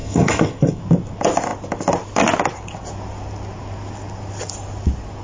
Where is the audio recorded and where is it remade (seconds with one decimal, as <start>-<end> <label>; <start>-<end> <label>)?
0.0-0.8 remade; 0.8-5.2 recorded